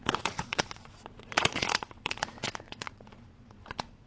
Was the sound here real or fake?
fake